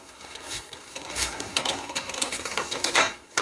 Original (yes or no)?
no